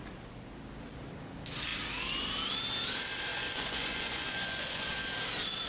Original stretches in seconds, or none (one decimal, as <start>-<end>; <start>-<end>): 0.0-3.3; 5.0-5.7